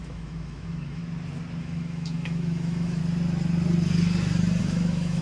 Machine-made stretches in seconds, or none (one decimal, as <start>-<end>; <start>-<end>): 0.0-1.0; 1.6-3.0; 4.6-5.2